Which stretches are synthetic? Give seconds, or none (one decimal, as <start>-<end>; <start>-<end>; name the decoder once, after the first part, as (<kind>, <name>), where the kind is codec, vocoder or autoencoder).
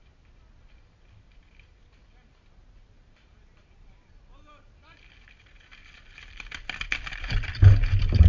none